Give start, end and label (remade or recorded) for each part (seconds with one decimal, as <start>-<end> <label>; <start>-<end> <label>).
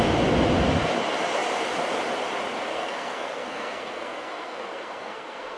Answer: 0.0-2.7 recorded; 2.7-5.6 remade